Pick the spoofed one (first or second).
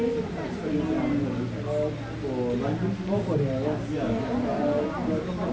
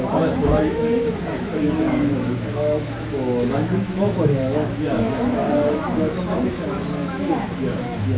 second